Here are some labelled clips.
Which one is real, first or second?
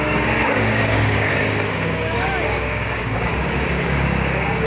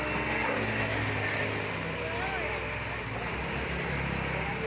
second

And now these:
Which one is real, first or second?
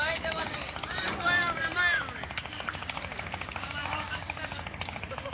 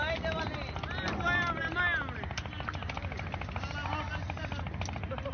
second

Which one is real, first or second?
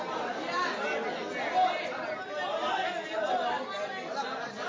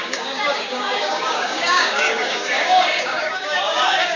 first